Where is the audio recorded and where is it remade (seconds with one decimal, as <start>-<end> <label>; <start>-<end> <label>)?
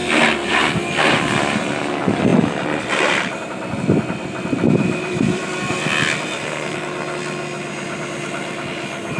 0.0-2.3 recorded; 2.3-5.7 remade; 5.7-9.2 recorded